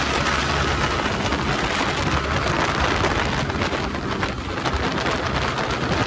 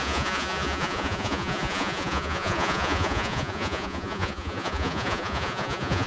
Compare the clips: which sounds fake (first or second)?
second